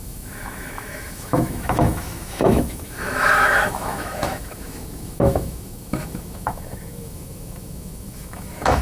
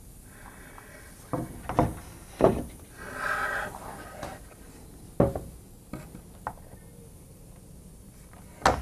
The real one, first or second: second